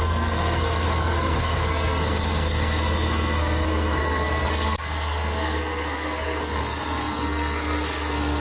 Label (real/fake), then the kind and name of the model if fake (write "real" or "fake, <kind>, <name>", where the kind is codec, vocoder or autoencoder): fake, codec, SNAC